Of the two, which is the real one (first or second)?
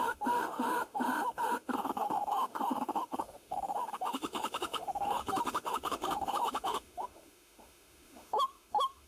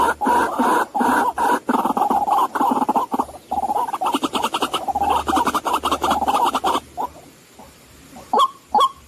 second